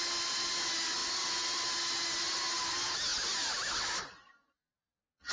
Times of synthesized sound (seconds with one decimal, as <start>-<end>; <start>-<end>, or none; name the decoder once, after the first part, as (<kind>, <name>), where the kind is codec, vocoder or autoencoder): none